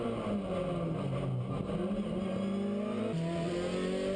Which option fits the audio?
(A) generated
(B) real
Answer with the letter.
B